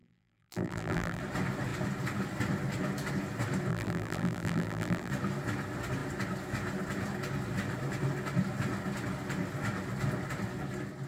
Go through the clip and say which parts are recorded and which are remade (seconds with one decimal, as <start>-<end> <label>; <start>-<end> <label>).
0.0-1.2 remade; 1.2-3.7 recorded; 3.7-5.1 remade; 5.1-11.1 recorded